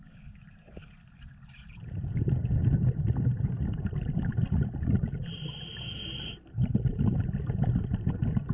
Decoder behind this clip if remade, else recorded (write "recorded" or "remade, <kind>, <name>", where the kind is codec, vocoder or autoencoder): recorded